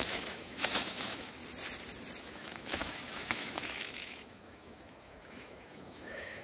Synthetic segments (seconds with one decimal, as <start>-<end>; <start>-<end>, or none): 0.0-1.4; 2.2-6.4

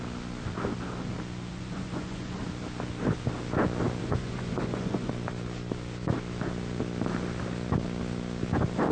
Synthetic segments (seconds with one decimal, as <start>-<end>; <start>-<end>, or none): 1.5-2.4; 4.0-5.1

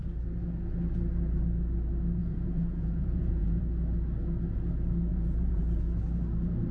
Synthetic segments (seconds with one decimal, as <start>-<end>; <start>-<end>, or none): 2.2-3.6; 5.1-5.6

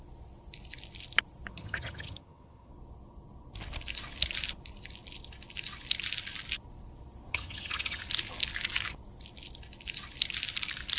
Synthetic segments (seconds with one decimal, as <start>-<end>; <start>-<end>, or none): 1.5-2.7; 7.3-8.0